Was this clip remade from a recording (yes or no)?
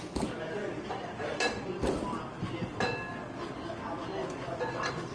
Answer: no